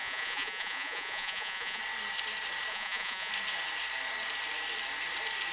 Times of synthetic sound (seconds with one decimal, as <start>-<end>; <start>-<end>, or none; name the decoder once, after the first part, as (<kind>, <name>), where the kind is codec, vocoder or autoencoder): 0.0-1.8 (vocoder, Vocos); 2.7-3.3